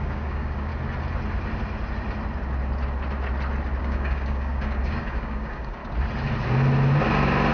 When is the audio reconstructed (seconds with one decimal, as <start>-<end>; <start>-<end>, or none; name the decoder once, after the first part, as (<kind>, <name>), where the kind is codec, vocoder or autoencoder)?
0.0-0.7 (codec, DAC); 3.8-5.8